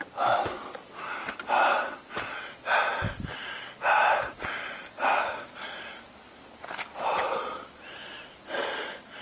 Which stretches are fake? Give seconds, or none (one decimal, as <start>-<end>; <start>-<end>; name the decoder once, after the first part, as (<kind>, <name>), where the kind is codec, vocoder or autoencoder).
none